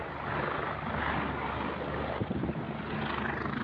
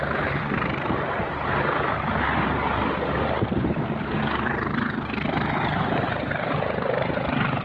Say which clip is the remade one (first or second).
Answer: second